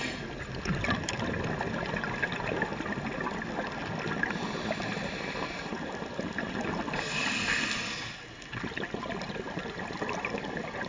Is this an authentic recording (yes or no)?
yes